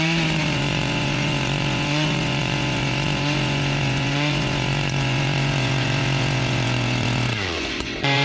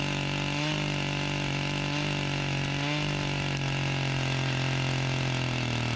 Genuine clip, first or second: second